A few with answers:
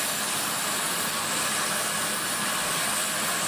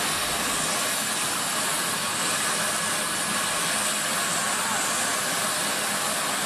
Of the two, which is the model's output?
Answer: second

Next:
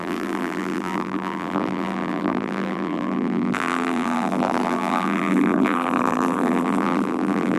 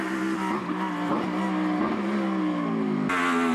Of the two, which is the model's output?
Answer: first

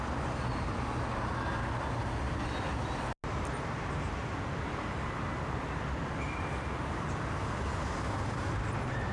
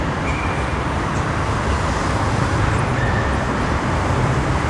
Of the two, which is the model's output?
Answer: second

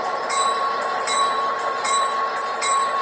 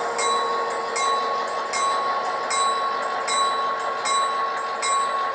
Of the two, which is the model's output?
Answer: first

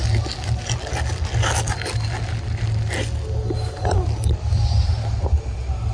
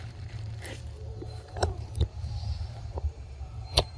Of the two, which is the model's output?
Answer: second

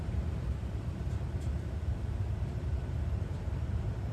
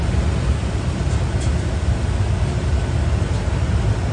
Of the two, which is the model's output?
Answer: first